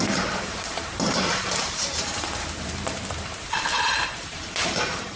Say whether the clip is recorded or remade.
remade